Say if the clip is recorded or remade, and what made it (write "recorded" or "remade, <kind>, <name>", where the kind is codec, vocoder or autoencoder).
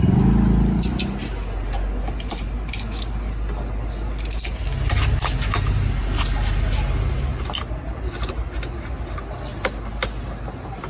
recorded